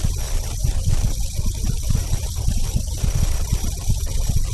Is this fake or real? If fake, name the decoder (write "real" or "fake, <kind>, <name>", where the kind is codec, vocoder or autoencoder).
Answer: fake, vocoder, BigVGAN v2